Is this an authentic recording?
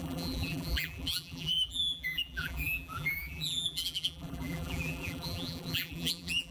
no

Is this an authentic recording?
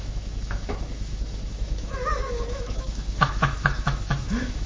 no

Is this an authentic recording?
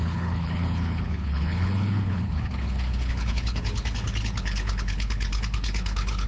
no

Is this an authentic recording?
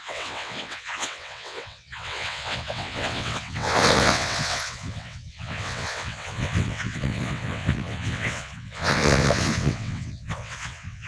no